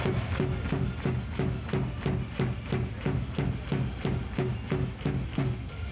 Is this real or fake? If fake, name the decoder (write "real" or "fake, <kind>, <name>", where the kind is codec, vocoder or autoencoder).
real